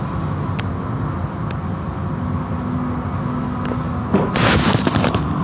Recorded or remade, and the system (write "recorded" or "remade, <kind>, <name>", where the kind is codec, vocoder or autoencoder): recorded